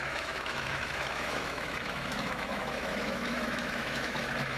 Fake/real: fake